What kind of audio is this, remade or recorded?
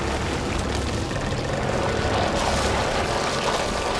recorded